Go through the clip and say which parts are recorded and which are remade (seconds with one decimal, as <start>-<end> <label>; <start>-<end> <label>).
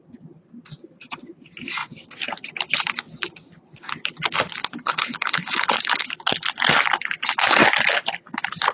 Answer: 0.0-4.6 recorded; 4.6-6.1 remade; 6.1-8.7 recorded